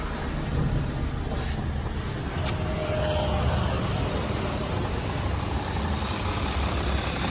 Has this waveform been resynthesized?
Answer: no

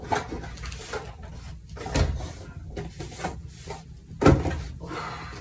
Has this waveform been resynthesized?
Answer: no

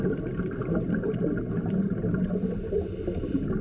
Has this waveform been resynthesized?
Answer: no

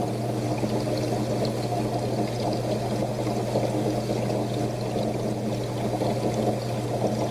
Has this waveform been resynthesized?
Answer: no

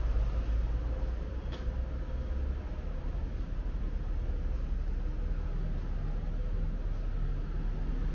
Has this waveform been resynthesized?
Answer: no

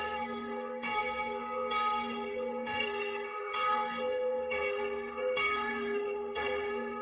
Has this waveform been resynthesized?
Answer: yes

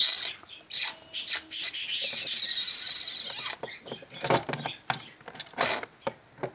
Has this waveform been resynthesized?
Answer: no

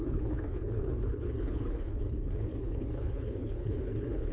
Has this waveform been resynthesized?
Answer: yes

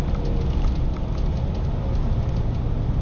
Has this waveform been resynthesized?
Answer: no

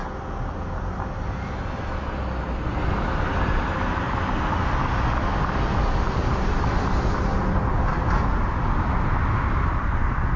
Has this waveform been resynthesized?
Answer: no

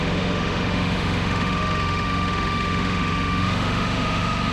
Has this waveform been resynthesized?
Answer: yes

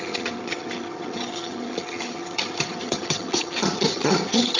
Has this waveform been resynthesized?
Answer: yes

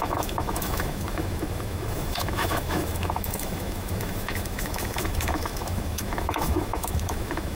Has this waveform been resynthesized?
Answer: yes